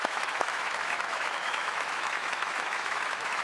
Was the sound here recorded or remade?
remade